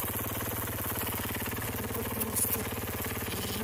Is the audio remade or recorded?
recorded